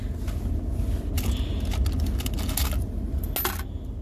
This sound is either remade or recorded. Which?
recorded